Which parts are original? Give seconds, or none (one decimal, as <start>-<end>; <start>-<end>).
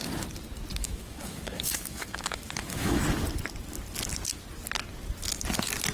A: 0.0-0.8; 3.0-5.9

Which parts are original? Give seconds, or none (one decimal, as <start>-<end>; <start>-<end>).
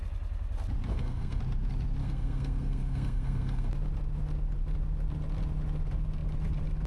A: 0.0-0.9; 1.4-2.0; 3.7-6.9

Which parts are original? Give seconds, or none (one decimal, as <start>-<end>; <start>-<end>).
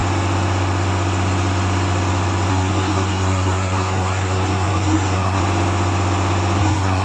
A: 0.0-2.5; 5.4-6.6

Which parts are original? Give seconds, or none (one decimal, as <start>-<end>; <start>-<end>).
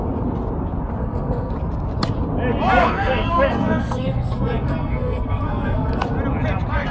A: 0.0-1.0; 1.5-2.8; 6.0-6.9